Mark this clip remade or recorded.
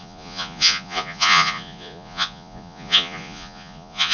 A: remade